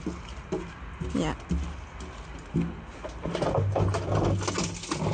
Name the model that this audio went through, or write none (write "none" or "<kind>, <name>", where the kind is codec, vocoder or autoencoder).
none